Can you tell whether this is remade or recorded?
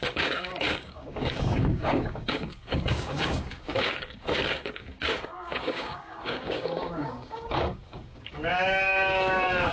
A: remade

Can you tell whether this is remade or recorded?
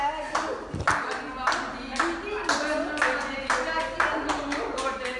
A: recorded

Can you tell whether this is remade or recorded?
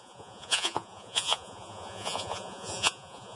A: remade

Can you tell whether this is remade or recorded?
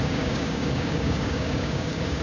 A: remade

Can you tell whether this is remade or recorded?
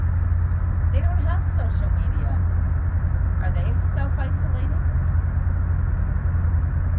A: recorded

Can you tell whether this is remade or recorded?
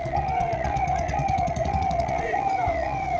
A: remade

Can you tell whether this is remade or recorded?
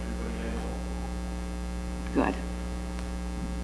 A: recorded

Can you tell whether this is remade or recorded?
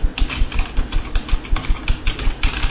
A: recorded